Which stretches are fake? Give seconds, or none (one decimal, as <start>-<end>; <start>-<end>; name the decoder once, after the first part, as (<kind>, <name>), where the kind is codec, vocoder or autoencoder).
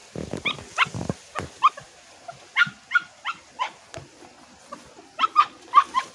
none